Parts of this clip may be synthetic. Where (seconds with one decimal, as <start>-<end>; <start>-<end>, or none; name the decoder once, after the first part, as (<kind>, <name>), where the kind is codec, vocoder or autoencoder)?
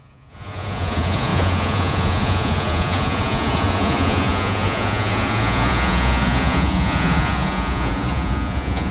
0.0-8.9 (vocoder, Vocos)